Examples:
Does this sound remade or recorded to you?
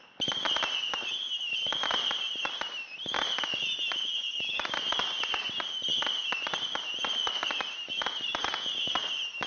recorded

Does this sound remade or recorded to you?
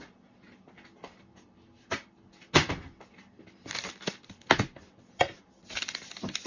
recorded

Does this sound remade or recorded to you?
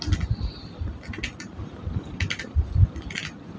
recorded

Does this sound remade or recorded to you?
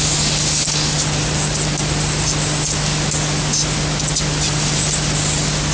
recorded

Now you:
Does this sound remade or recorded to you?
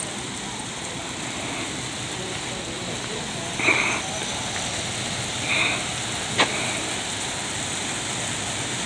recorded